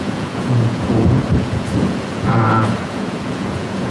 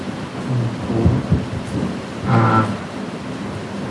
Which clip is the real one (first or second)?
second